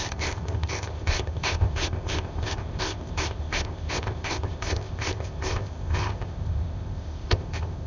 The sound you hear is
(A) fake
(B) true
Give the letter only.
A